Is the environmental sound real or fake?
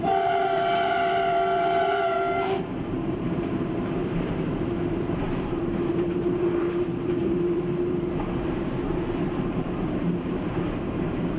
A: fake